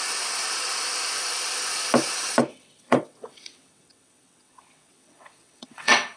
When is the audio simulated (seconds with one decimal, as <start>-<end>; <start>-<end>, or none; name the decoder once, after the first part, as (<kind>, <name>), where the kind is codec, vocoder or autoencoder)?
2.5-6.2 (vocoder, WaveNeXt)